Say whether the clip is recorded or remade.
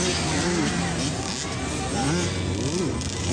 recorded